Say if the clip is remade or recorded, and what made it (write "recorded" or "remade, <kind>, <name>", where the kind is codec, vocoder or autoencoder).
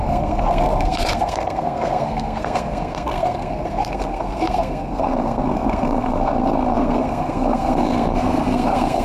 remade, codec, SNAC